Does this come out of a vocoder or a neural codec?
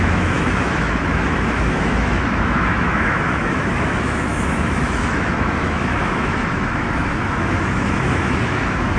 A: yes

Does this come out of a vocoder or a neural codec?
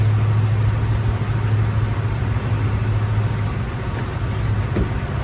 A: no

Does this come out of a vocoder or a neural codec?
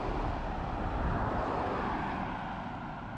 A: no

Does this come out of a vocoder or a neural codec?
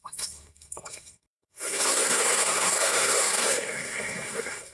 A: yes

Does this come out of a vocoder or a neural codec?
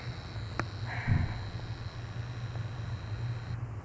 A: no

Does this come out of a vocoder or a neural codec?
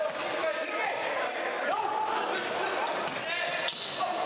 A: no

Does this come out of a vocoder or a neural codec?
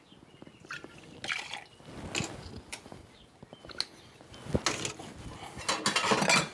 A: no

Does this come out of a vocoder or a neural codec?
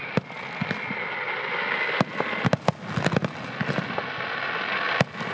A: no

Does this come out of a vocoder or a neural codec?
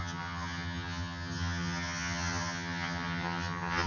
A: yes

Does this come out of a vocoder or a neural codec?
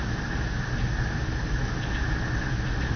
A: no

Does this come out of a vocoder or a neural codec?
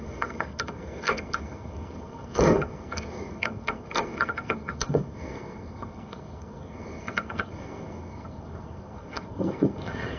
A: yes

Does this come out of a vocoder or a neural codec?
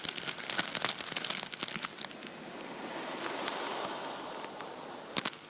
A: no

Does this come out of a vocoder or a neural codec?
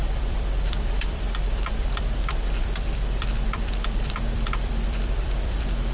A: yes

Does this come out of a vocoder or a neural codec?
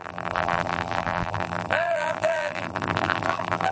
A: yes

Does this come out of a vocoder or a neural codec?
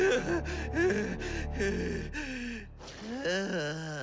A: no